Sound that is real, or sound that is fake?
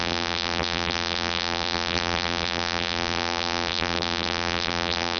fake